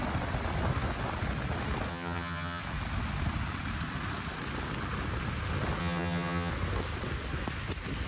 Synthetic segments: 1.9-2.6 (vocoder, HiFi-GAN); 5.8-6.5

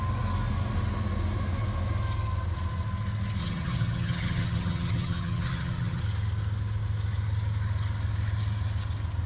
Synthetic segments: 3.4-6.0 (vocoder, HiFi-GAN)

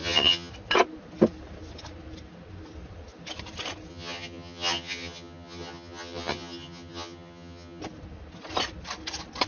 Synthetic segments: 0.0-0.5 (vocoder, HiFi-GAN); 3.9-7.8

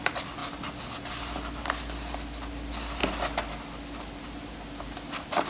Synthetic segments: none

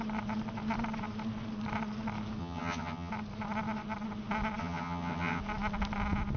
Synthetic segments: 2.4-3.1 (vocoder, HiFi-GAN); 4.6-5.4

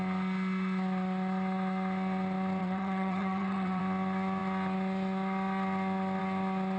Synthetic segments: 2.6-3.8 (vocoder, HiFi-GAN)

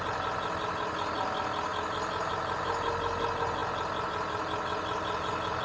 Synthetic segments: none

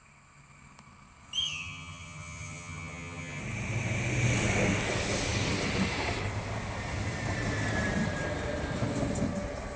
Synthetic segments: 1.4-3.4 (vocoder, HiFi-GAN)